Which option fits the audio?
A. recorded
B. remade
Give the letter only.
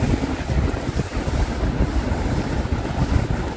A